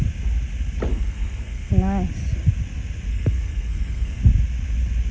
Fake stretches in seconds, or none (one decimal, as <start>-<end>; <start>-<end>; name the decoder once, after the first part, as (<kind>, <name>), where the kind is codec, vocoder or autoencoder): 0.9-1.7 (codec, SNAC); 3.1-4.2